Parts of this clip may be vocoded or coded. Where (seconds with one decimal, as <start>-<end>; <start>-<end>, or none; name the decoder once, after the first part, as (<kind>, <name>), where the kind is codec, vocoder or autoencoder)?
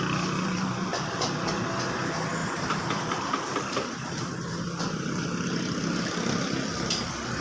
0.9-1.5 (vocoder, BigVGAN v2); 2.4-4.3